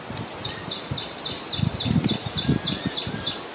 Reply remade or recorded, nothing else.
recorded